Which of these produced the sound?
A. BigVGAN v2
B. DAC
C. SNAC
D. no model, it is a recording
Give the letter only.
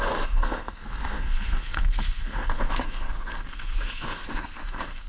C